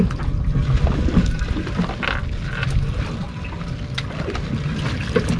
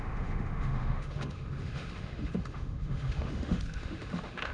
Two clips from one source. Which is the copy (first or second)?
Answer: second